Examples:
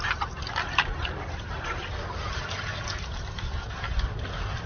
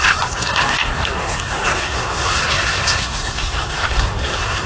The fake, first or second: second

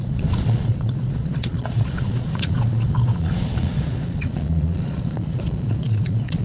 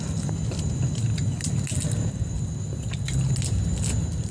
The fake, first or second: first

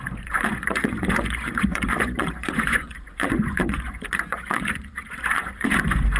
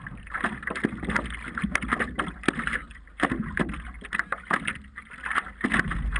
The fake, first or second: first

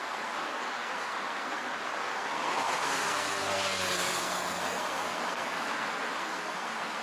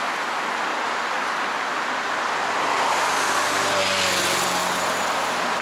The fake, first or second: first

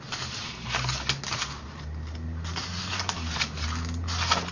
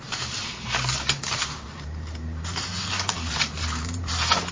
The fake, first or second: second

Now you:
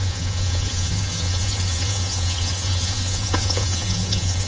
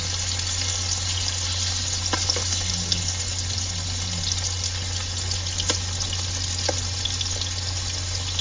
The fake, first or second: first